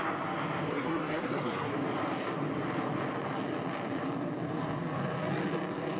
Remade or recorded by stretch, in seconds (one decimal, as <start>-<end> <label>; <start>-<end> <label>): 0.0-0.7 recorded; 0.7-1.7 remade; 1.7-6.0 recorded